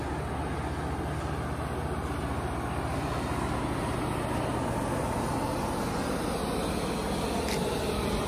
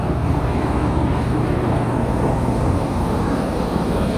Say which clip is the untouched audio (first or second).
first